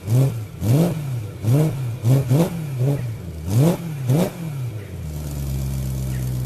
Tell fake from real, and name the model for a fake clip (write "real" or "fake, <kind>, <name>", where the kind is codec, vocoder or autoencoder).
real